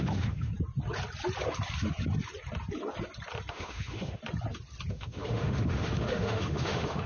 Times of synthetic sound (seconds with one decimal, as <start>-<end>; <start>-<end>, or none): 0.0-0.5; 3.5-4.2; 4.9-7.1